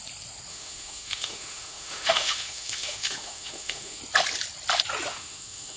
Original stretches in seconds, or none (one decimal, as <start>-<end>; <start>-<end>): 0.0-0.5; 4.0-5.1